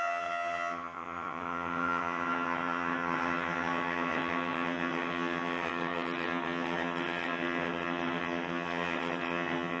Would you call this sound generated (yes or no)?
yes